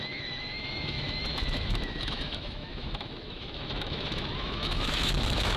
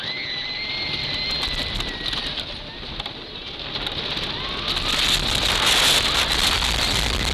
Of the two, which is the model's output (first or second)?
first